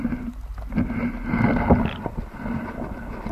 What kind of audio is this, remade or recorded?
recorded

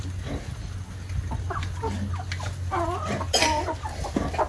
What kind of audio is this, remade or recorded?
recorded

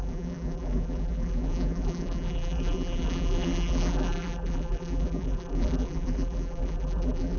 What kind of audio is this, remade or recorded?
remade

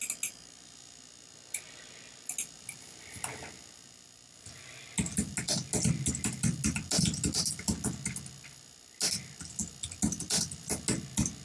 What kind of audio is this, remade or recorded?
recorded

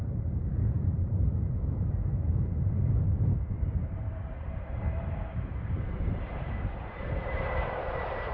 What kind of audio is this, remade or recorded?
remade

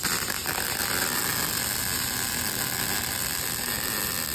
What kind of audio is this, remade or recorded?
recorded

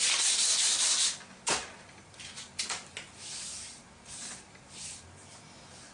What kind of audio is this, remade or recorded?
remade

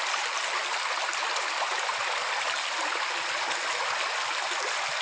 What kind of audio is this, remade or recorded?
recorded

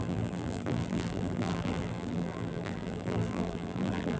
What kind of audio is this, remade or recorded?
remade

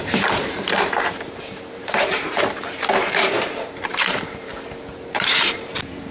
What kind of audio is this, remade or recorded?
remade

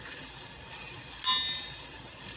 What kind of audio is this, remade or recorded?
recorded